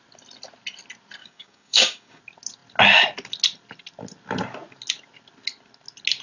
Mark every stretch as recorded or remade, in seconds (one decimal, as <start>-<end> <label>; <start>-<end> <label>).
0.0-1.2 recorded; 1.2-2.2 remade; 2.2-6.2 recorded